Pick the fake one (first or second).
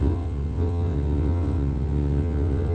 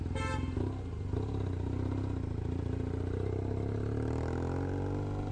first